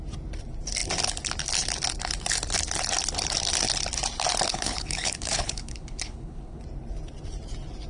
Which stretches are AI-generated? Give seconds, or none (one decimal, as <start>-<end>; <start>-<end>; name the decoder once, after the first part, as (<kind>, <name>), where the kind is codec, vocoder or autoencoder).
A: 4.5-6.6 (codec, HILCodec)